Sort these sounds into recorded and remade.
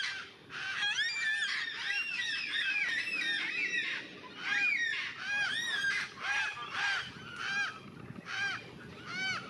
recorded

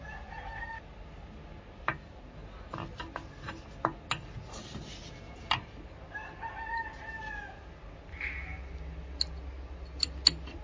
recorded